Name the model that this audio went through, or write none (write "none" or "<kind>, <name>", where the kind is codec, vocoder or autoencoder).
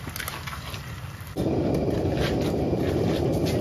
none